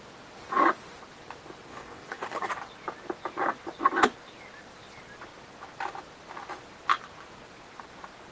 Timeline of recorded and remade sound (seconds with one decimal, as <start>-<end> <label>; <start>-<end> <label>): 0.0-1.7 recorded; 1.7-2.5 remade; 2.5-8.3 recorded